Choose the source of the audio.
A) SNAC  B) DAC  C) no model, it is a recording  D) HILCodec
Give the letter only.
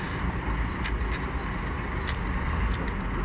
C